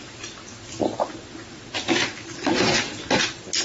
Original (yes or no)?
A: yes